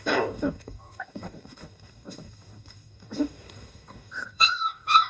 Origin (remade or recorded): remade